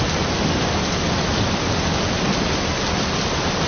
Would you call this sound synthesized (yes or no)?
no